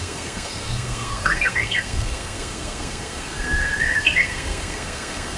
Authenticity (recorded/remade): remade